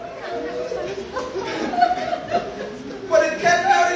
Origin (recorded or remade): recorded